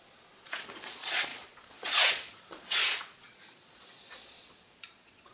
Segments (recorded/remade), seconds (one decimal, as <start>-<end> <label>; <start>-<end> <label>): 0.0-5.3 remade